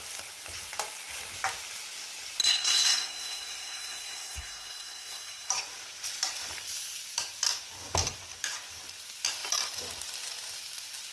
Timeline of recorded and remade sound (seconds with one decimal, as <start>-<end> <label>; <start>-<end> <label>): 0.0-2.4 recorded; 2.4-5.5 remade; 5.5-11.1 recorded